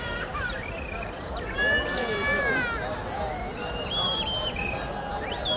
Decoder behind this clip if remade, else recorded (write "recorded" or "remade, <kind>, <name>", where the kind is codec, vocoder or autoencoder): recorded